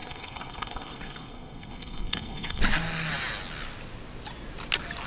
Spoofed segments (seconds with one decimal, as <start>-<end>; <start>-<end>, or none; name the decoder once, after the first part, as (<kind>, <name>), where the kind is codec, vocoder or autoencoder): 0.0-2.6 (codec, SNAC)